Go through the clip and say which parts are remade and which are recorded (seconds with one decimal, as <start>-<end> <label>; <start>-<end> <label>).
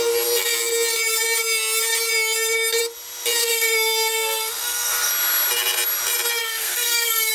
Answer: 0.0-3.4 recorded; 3.4-5.1 remade; 5.1-6.4 recorded; 6.4-7.3 remade